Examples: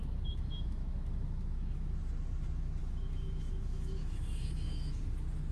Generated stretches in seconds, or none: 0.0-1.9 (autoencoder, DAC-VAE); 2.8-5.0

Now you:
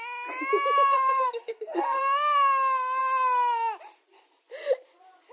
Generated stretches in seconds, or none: 0.9-2.0 (codec, SNAC)

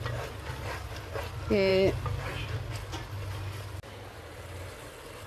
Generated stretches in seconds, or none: none

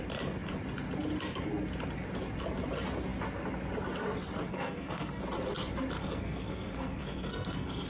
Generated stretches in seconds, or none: 4.5-5.2 (codec, SNAC); 6.0-7.9

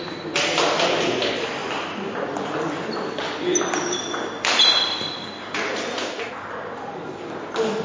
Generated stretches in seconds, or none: 1.6-6.3 (vocoder, BigVGAN v2)

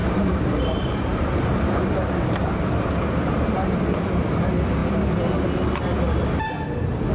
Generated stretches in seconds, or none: 0.0-3.7 (vocoder, BigVGAN v2)